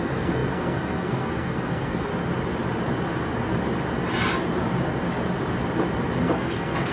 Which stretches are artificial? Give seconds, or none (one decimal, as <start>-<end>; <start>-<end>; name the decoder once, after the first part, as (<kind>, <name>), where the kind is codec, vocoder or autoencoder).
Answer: 0.0-2.1 (codec, SNAC); 6.2-6.9